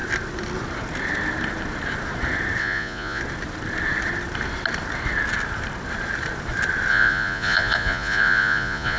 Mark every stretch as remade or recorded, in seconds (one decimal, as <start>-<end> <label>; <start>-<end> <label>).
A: 0.0-2.6 recorded; 2.6-3.2 remade; 3.2-6.9 recorded; 6.9-9.0 remade